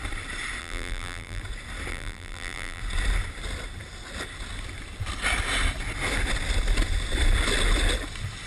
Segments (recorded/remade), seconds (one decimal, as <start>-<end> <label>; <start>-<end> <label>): 0.0-0.6 recorded; 0.6-1.4 remade; 1.4-1.9 recorded; 1.9-2.8 remade; 2.8-8.5 recorded